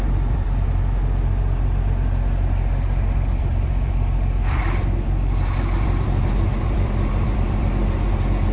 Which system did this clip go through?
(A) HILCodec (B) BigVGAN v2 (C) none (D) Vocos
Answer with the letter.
B